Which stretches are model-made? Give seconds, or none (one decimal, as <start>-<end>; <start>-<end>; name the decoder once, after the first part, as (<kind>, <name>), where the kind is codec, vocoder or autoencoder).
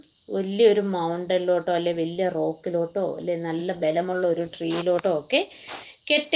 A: 3.6-5.0 (vocoder, Vocos)